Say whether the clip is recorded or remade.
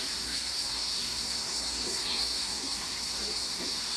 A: remade